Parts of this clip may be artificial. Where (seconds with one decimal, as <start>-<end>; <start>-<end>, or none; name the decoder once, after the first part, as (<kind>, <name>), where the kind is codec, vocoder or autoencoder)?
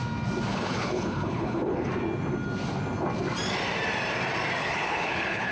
0.5-1.9 (codec, HILCodec); 4.6-5.5